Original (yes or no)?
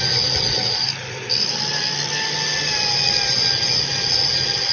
no